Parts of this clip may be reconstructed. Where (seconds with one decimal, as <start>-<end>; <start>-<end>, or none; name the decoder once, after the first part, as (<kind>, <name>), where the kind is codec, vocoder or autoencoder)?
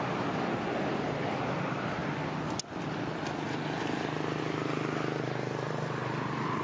none